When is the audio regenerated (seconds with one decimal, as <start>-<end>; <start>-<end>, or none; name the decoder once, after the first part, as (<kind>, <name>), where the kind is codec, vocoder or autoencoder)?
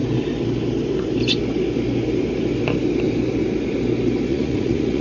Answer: 4.3-5.0 (vocoder, Vocos)